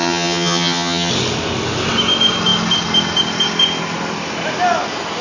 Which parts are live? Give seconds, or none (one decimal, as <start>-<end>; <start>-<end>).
1.1-5.2